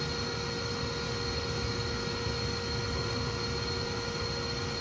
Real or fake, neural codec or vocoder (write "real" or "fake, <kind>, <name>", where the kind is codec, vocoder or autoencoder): real